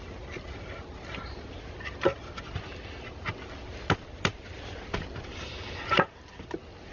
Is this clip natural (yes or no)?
yes